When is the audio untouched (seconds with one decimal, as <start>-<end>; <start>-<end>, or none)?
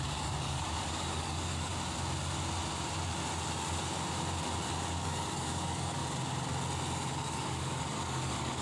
1.7-4.9; 6.0-7.1